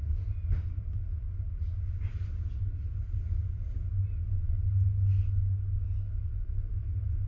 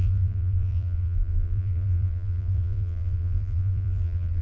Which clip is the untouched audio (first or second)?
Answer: first